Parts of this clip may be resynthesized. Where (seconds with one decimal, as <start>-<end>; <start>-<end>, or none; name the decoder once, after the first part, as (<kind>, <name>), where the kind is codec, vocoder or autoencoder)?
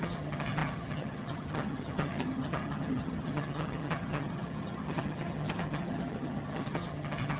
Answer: 0.0-7.4 (vocoder, HiFi-GAN)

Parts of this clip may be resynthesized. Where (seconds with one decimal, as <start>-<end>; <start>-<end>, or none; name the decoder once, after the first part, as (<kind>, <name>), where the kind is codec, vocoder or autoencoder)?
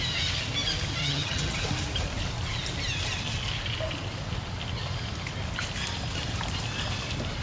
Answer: 1.0-1.6 (vocoder, HiFi-GAN)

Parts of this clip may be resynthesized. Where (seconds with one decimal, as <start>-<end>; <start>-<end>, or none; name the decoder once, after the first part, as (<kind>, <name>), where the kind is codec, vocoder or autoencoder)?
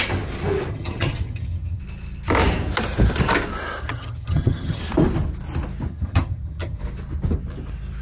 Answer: 0.7-1.8 (vocoder, HiFi-GAN); 3.8-4.8; 5.9-6.8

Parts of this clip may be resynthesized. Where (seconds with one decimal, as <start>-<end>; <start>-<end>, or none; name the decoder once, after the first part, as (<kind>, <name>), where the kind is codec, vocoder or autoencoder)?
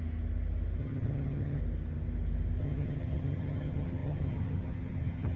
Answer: 0.8-1.6 (vocoder, HiFi-GAN); 2.6-5.4